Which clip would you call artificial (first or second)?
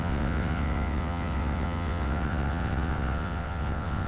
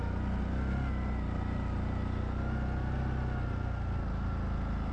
first